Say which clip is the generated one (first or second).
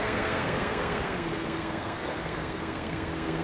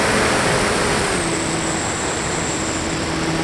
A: first